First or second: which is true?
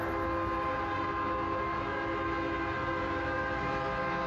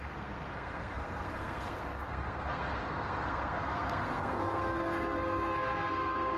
first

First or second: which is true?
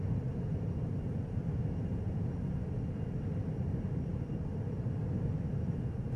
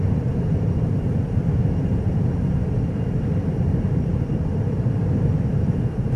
first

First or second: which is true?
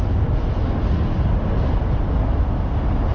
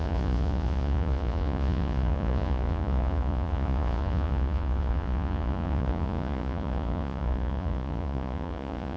first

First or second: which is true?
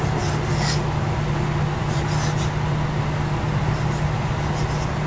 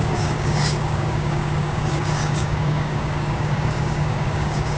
first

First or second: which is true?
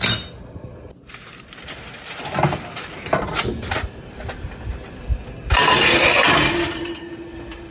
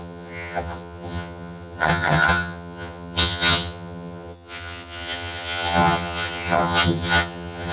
first